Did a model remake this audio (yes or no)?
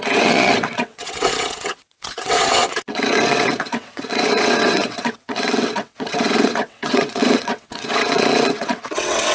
yes